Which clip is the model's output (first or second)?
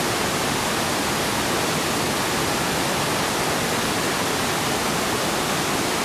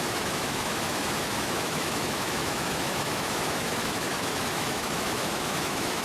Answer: second